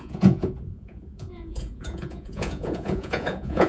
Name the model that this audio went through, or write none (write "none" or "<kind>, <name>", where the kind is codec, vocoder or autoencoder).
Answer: vocoder, Vocos